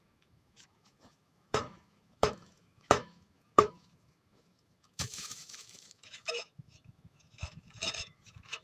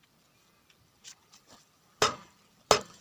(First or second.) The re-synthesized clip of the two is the first